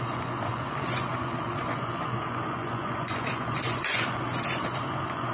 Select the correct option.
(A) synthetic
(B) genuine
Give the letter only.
A